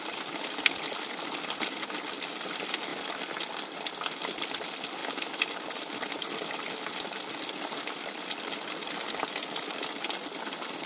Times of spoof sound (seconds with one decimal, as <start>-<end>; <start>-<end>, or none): none